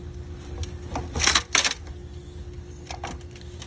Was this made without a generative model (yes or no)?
yes